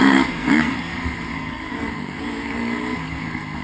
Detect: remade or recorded remade